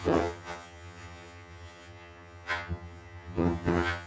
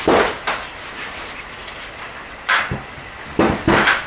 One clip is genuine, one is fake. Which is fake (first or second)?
first